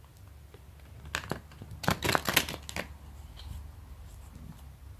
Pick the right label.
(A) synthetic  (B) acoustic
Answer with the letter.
B